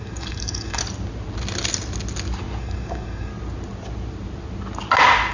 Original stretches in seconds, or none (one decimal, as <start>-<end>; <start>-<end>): 0.8-2.6; 3.3-5.3